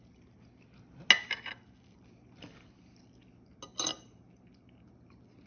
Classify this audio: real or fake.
real